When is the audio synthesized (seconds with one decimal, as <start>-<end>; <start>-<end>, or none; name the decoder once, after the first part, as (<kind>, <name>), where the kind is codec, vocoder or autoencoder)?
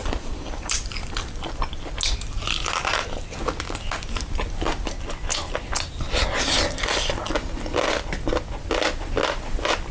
0.0-1.6 (vocoder, BigVGAN v2); 5.3-5.9